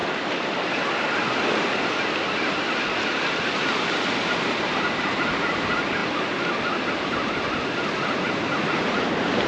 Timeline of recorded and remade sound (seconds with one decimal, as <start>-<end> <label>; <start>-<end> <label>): 0.0-4.3 recorded; 4.3-9.5 remade